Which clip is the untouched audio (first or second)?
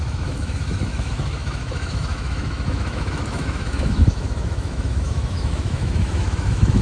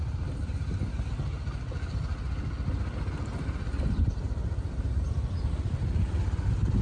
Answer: second